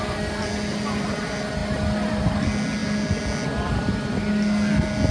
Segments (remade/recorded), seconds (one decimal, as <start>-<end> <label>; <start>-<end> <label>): 0.0-5.1 recorded